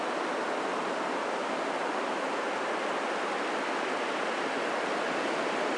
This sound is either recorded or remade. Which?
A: recorded